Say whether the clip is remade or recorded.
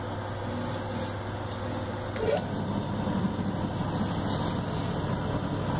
recorded